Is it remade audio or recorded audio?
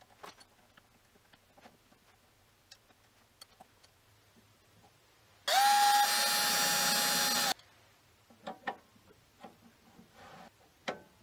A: recorded